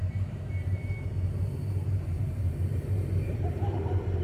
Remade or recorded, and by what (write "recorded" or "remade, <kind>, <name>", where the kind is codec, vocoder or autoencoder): remade, vocoder, BigVGAN v2